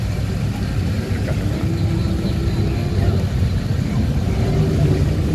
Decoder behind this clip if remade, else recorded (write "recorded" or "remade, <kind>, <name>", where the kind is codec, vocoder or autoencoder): recorded